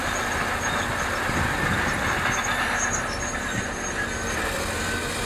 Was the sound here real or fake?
real